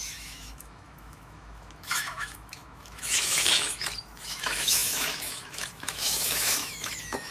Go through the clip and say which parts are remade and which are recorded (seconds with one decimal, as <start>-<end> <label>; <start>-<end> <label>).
0.0-7.3 remade